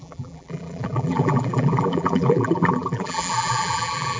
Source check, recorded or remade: remade